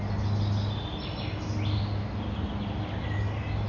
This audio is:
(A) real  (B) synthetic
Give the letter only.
A